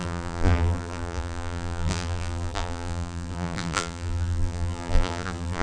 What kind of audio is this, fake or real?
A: fake